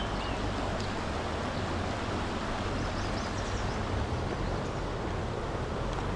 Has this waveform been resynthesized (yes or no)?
no